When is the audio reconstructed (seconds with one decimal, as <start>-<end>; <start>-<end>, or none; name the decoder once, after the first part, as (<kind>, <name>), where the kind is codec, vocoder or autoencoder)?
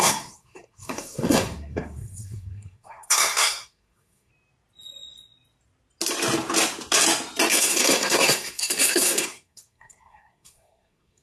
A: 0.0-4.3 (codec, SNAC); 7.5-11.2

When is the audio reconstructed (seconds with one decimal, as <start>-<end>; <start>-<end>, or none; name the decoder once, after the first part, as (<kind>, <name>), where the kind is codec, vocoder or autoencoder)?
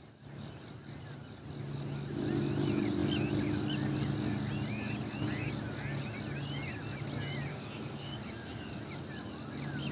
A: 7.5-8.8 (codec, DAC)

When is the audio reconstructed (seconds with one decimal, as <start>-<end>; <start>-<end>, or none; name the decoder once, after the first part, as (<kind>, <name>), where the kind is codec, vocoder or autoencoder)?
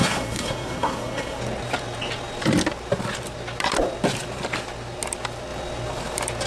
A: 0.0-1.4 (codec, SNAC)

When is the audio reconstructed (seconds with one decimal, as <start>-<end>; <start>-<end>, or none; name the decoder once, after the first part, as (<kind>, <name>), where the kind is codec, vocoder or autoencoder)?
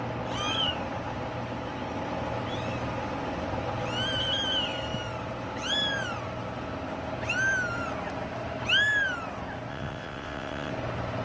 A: 9.7-10.7 (vocoder, WaveNeXt)